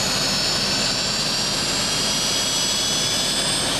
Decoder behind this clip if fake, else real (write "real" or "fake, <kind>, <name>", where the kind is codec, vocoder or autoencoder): real